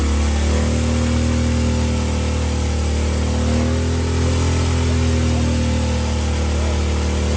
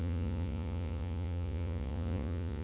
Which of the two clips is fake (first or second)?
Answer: second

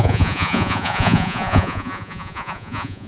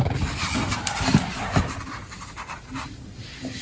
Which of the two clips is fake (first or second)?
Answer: first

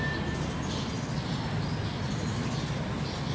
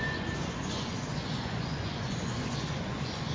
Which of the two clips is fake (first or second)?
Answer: second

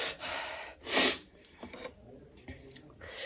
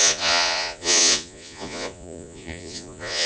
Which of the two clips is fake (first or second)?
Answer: second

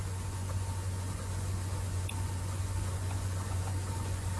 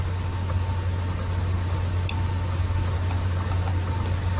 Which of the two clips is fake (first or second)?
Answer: first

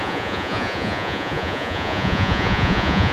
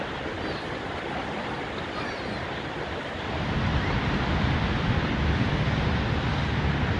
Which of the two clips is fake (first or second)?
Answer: first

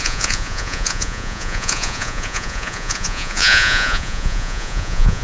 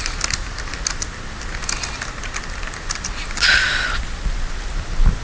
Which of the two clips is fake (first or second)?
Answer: first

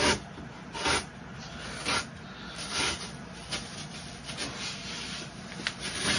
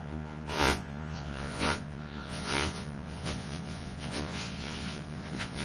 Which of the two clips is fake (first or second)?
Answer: second